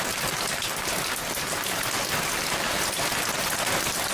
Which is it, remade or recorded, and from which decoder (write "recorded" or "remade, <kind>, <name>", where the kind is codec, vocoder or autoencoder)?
recorded